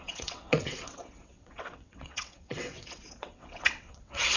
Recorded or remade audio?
remade